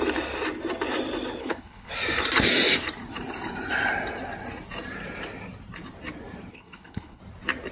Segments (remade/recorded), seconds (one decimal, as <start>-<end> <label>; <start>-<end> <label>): 0.0-1.4 recorded; 1.4-1.9 remade; 1.9-6.5 recorded; 6.5-7.2 remade; 7.2-7.7 recorded